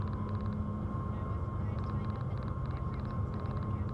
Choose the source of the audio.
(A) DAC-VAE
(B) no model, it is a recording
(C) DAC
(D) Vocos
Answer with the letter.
B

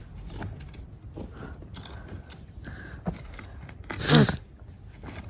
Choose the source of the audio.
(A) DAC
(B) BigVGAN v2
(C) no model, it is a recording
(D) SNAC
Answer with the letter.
C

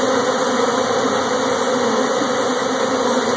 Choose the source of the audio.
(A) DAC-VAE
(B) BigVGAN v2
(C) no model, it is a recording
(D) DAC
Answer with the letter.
C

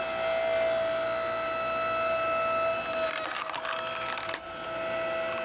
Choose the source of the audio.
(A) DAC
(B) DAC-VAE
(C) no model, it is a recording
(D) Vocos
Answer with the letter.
C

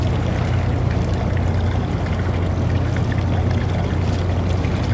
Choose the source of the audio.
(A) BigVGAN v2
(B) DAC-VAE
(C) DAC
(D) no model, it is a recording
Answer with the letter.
D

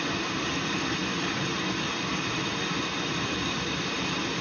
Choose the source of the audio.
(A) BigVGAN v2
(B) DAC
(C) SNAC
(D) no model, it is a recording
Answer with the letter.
D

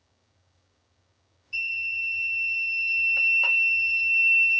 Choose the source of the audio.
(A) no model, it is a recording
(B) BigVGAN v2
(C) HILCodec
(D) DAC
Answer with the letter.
D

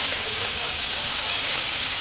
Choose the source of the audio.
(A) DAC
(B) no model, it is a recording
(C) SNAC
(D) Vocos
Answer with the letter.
A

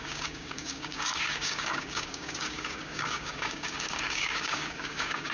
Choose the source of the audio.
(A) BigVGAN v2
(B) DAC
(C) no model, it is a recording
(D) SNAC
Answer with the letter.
B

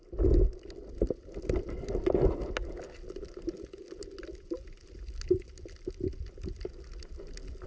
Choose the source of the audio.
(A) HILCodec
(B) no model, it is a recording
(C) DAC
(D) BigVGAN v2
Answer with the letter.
B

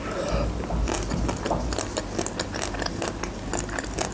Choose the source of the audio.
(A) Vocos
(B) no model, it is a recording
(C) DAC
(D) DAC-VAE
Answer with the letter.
B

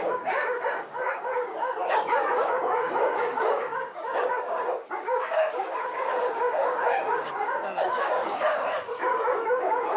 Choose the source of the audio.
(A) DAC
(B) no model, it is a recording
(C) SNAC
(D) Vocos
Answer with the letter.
A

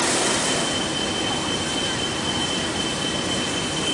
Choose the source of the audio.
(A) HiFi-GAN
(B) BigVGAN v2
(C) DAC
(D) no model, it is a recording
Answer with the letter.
D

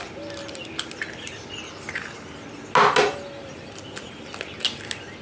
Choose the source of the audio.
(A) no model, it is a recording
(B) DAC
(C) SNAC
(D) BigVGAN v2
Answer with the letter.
A